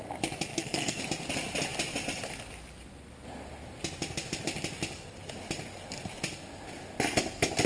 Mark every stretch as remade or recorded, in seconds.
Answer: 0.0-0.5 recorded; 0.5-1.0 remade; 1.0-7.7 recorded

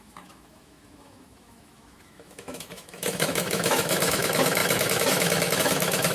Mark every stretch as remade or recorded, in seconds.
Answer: 0.0-6.1 remade

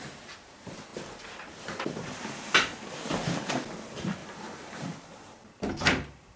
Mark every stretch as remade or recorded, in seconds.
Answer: 0.0-6.4 recorded

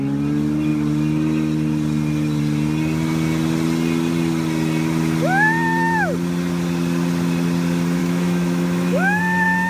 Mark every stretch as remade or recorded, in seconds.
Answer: 0.0-8.0 recorded; 8.0-9.2 remade; 9.2-9.7 recorded

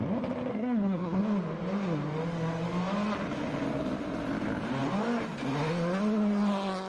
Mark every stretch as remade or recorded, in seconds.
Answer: 0.0-0.5 recorded; 0.5-1.2 remade; 1.2-6.9 recorded